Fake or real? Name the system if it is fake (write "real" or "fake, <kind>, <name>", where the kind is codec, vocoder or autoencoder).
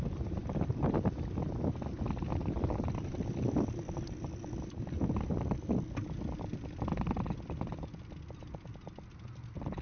real